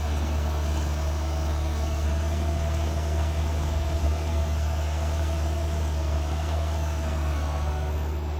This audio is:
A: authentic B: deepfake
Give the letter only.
B